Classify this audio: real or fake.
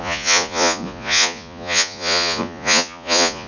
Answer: fake